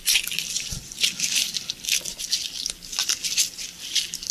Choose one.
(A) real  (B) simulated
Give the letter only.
A